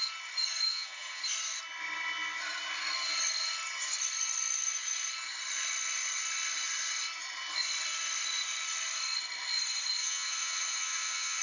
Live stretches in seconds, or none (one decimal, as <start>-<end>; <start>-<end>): 0.0-0.7; 1.2-10.0